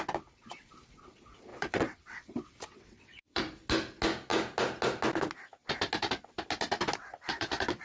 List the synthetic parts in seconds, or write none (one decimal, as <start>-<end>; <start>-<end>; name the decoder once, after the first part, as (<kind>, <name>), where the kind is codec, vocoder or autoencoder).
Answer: 1.5-3.4 (vocoder, WaveNeXt); 7.0-7.8